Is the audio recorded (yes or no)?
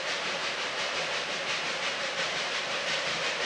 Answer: no